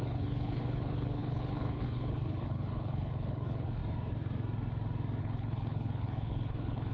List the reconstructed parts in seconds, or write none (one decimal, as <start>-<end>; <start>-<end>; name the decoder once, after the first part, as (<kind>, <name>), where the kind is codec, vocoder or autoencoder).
0.0-3.8 (codec, HILCodec); 5.2-6.9